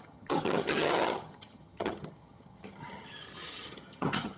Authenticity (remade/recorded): remade